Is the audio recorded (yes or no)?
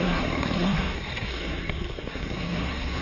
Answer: no